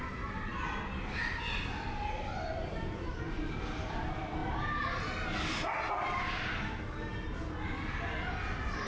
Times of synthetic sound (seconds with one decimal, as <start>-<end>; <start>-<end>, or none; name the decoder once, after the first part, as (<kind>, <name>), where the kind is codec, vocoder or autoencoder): 0.0-0.5 (vocoder, BigVGAN v2); 2.5-4.4; 5.9-7.1